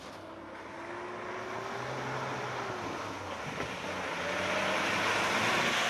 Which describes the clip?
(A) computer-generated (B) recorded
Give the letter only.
B